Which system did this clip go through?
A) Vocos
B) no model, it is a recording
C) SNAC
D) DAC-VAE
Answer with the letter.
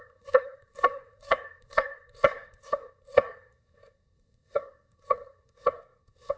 C